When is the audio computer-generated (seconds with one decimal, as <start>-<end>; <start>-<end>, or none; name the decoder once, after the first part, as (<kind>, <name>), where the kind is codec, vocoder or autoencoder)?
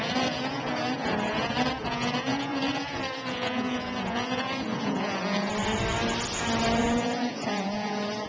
0.0-5.5 (vocoder, Vocos); 6.8-8.3